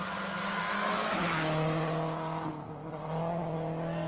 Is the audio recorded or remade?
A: recorded